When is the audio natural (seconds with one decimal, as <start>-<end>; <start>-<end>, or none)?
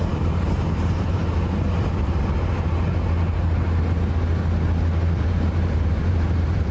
1.2-5.2